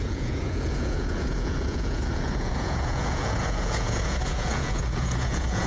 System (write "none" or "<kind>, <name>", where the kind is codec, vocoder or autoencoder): vocoder, Vocos